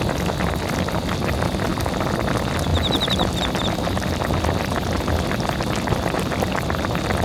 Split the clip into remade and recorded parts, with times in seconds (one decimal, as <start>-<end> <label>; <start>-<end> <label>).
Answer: 0.0-7.2 recorded

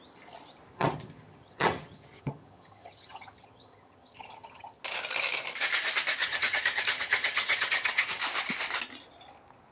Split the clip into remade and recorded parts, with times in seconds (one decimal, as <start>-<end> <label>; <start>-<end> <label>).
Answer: 0.0-0.7 recorded; 0.7-4.8 remade; 4.8-6.2 recorded; 6.2-8.2 remade; 8.2-9.7 recorded

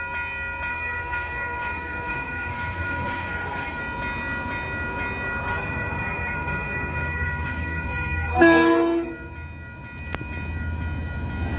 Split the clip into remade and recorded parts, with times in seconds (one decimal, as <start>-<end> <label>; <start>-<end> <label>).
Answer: 0.0-0.7 recorded; 0.7-3.8 remade; 3.8-5.5 recorded; 5.5-9.1 remade; 9.1-11.6 recorded